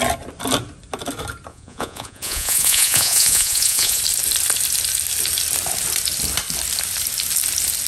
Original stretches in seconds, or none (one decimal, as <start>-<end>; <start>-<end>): 0.0-1.5; 4.0-7.9